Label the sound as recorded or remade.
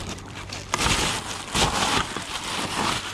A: recorded